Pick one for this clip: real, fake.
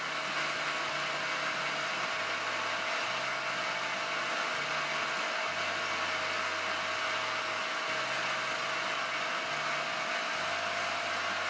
real